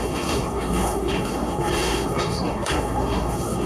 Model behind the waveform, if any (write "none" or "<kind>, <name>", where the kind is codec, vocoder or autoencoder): codec, SNAC